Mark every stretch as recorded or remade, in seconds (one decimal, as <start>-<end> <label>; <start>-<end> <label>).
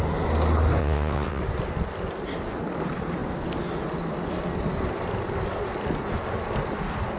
0.0-0.8 recorded; 0.8-1.4 remade; 1.4-7.2 recorded